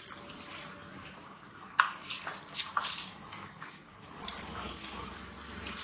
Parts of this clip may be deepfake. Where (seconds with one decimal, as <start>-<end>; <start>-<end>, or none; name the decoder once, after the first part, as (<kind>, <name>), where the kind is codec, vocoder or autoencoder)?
0.8-2.1 (codec, DAC); 3.0-5.2